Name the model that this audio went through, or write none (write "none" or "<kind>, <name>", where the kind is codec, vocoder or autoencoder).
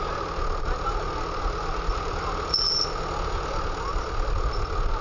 none